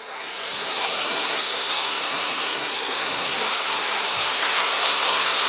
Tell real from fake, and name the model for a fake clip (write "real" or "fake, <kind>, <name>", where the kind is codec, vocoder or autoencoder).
fake, codec, SNAC